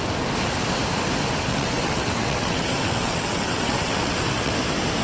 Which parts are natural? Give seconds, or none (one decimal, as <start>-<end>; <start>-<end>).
0.0-1.5; 4.5-5.0